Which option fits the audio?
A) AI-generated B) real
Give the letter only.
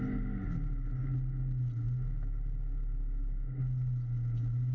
B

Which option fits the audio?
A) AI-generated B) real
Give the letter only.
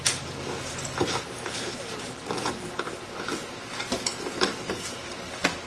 B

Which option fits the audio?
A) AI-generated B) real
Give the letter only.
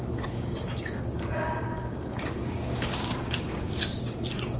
A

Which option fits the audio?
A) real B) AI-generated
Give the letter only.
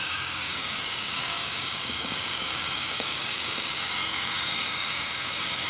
B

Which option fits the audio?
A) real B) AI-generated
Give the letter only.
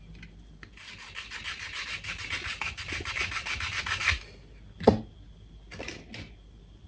A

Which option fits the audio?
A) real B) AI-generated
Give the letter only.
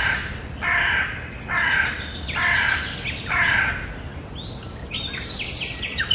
A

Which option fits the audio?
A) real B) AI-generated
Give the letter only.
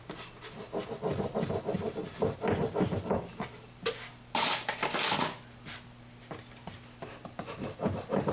A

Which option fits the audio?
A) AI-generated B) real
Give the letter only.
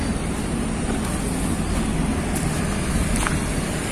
B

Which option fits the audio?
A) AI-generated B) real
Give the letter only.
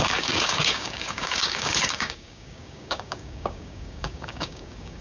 A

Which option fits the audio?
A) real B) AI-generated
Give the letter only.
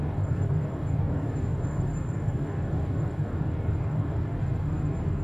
B